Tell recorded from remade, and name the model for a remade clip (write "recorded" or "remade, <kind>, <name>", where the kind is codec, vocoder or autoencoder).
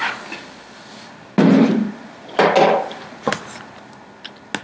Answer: recorded